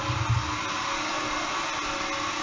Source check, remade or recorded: recorded